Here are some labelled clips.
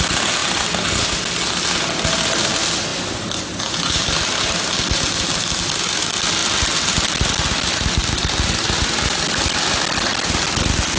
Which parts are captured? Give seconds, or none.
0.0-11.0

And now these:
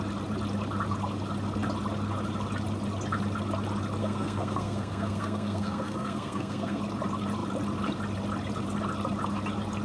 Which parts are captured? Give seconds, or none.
0.0-4.0; 6.8-9.8